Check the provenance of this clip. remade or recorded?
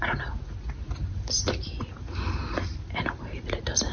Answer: recorded